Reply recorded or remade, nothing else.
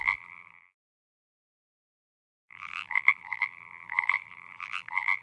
remade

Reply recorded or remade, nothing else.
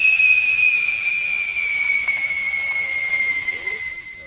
recorded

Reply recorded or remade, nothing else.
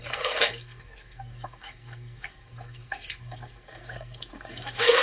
remade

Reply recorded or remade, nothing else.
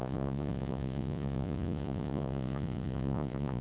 remade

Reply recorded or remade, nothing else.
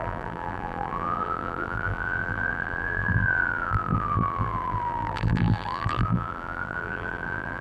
remade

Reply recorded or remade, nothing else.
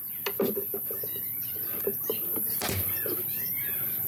recorded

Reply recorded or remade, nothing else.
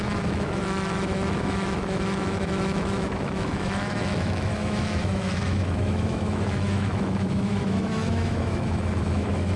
remade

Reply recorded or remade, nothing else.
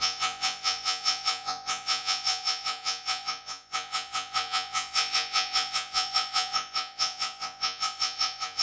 remade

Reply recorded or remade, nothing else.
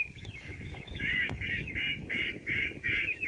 remade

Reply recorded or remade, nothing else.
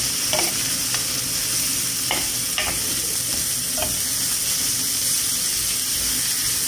recorded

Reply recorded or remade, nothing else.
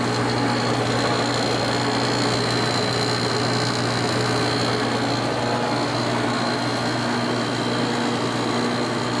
recorded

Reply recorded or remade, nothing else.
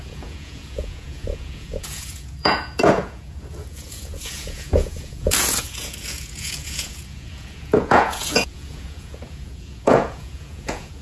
remade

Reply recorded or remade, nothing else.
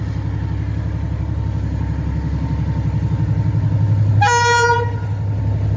recorded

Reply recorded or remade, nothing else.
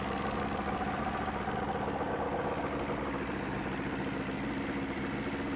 recorded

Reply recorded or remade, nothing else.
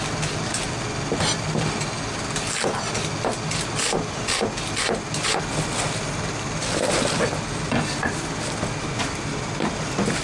recorded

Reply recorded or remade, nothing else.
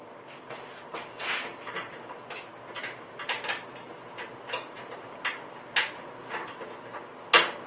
recorded